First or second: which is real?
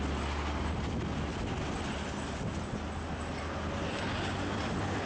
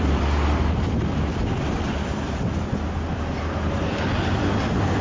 first